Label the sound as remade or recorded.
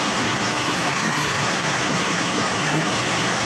remade